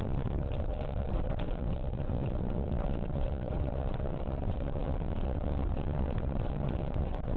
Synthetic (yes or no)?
yes